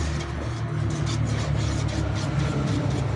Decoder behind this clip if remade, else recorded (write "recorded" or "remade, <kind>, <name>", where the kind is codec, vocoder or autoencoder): recorded